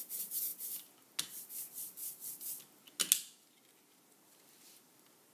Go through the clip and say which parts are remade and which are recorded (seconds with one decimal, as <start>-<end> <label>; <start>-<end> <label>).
0.0-5.3 recorded

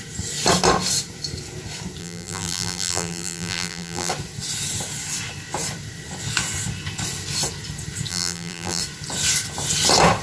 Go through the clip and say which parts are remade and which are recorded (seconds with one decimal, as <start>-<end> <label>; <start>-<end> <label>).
0.0-2.0 recorded; 2.0-4.1 remade; 4.1-8.1 recorded; 8.1-8.8 remade; 8.8-10.2 recorded

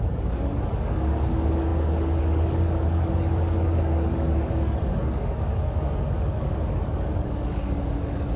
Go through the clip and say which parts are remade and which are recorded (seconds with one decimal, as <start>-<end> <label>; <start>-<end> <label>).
0.0-8.4 remade

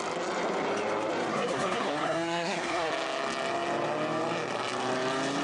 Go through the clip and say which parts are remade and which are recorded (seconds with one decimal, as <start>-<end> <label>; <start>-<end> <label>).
0.0-1.3 recorded; 1.3-2.9 remade; 2.9-5.4 recorded

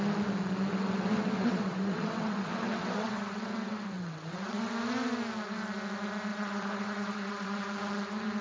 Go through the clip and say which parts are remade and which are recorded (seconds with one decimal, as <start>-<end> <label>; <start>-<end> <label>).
0.0-0.7 recorded; 0.7-4.7 remade; 4.7-6.3 recorded; 6.3-7.6 remade; 7.6-8.4 recorded